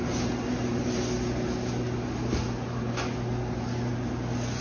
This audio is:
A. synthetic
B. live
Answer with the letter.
B